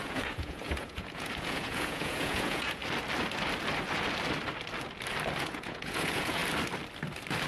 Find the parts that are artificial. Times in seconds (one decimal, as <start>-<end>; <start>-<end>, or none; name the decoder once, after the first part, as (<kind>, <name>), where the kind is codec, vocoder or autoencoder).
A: 0.0-2.8 (vocoder, Vocos); 5.4-6.4